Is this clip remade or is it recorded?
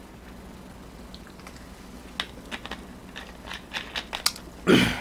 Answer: recorded